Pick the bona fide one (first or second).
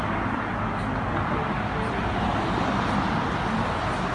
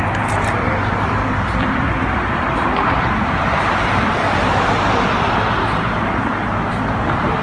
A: first